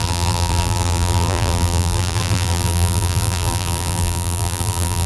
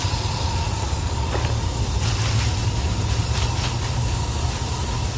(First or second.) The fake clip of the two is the first